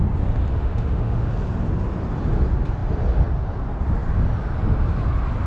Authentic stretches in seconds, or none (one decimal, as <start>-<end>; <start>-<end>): 0.0-0.5; 1.3-5.5